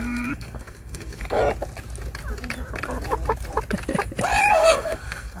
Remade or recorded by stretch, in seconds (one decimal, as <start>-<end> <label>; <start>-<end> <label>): 0.0-1.4 remade; 1.4-4.5 recorded; 4.5-5.4 remade